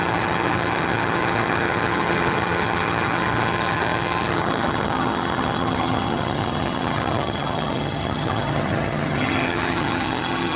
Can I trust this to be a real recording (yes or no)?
no